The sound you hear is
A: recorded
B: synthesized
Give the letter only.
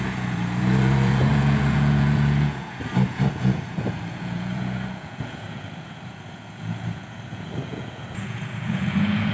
B